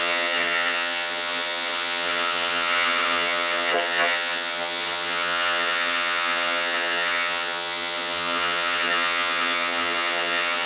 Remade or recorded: remade